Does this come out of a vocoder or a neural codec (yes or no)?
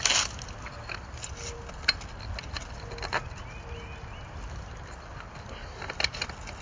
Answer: no